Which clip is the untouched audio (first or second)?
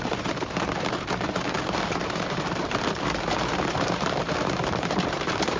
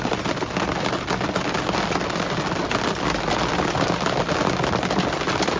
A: second